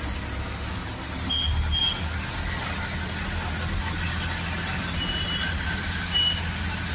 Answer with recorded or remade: recorded